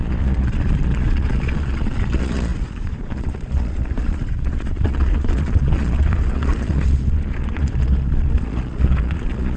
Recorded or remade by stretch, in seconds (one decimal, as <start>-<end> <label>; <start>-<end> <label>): 0.0-9.6 remade